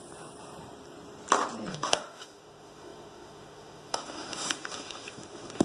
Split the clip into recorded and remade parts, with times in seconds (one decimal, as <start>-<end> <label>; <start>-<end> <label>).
0.0-1.7 recorded; 1.7-5.6 remade